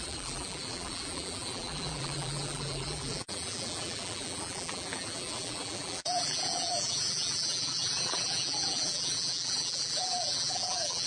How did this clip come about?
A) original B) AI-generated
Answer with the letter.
B